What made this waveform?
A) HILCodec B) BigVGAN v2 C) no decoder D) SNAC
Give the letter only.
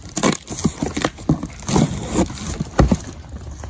C